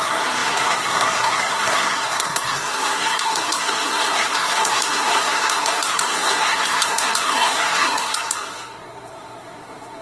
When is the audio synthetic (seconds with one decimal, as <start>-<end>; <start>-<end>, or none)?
0.0-10.0

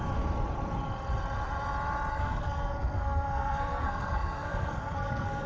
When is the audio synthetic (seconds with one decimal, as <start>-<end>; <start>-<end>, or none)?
2.1-5.5

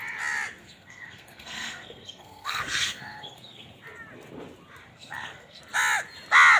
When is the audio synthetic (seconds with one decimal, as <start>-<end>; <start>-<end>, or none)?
0.6-3.8; 4.9-5.6